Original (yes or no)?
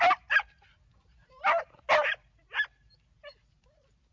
yes